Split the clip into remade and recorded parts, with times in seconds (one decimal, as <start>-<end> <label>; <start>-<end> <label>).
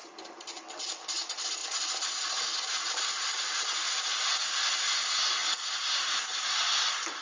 0.0-7.2 recorded